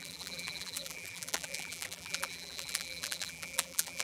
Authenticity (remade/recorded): remade